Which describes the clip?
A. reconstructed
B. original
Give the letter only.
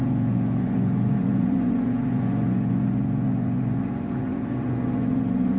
A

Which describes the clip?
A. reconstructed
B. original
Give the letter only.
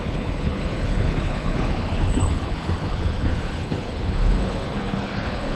A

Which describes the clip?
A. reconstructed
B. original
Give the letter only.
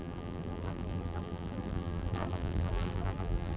A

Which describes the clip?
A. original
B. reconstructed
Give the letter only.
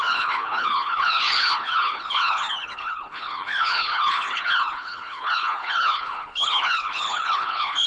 B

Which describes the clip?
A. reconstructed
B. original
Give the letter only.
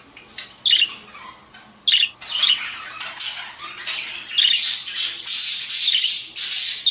B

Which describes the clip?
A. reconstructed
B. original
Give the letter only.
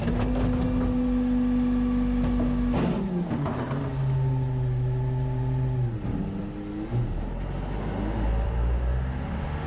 B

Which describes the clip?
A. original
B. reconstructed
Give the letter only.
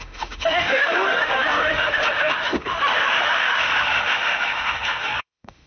B